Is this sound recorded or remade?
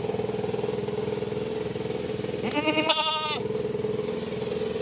recorded